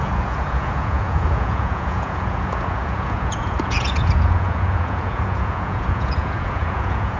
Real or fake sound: fake